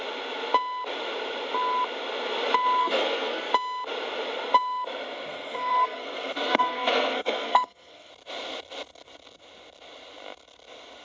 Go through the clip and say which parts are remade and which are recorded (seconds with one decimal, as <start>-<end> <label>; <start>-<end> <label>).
0.0-2.8 recorded; 2.8-3.5 remade; 3.5-5.3 recorded; 5.3-8.1 remade; 8.1-11.0 recorded